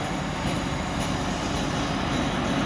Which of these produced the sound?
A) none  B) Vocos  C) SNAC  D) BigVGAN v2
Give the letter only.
A